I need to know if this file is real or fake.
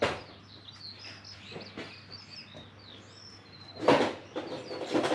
real